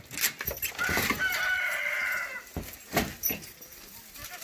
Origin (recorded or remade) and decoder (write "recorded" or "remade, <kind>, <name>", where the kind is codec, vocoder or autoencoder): recorded